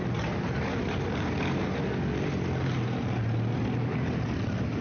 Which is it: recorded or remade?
recorded